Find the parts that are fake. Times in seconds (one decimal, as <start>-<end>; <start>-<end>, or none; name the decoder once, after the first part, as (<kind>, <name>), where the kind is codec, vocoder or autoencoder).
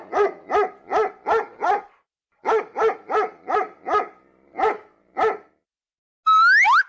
none